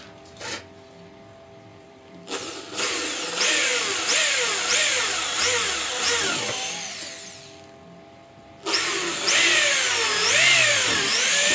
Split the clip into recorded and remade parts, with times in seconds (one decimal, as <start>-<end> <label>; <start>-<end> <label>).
0.0-1.7 recorded; 1.7-5.0 remade; 5.0-10.2 recorded; 10.2-11.5 remade